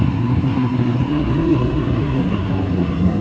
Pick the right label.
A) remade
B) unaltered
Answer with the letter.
A